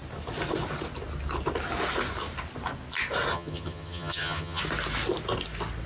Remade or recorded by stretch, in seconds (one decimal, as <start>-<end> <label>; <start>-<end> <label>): 0.0-3.3 recorded; 3.3-4.6 remade; 4.6-5.9 recorded